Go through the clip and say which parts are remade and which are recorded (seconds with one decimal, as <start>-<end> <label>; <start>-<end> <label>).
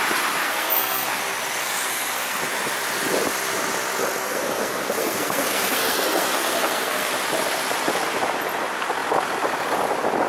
0.0-0.4 recorded; 0.4-1.2 remade; 1.2-1.6 recorded; 1.6-2.4 remade; 2.4-4.2 recorded; 4.2-7.1 remade; 7.1-10.3 recorded